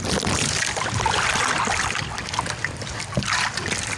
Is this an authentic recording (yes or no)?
no